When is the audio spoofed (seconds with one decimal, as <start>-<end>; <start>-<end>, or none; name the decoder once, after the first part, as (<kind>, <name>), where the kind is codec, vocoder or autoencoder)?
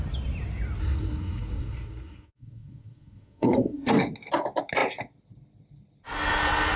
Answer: 0.8-3.9 (codec, SNAC)